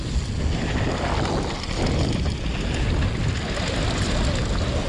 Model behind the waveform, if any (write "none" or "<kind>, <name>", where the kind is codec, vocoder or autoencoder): none